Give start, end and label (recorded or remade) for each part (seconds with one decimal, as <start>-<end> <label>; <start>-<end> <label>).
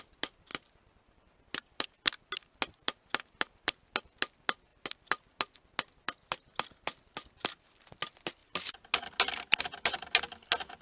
0.0-10.8 recorded